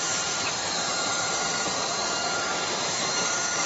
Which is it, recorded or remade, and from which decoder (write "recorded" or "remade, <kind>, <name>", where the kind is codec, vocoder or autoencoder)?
remade, vocoder, BigVGAN v2